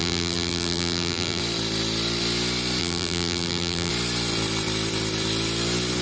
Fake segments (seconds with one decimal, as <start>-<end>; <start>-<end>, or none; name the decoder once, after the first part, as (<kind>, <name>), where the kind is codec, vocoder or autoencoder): 0.0-1.4 (vocoder, BigVGAN v2); 2.8-3.9